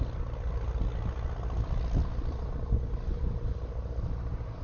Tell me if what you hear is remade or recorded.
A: recorded